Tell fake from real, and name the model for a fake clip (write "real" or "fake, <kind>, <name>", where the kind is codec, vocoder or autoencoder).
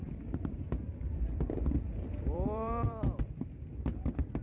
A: fake, vocoder, BigVGAN v2